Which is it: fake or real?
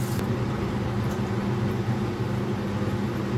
real